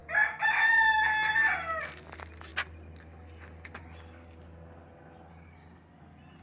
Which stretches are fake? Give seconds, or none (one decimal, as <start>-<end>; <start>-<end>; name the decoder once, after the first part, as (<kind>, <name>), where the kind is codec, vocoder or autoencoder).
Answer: none